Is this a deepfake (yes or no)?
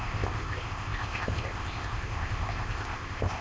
yes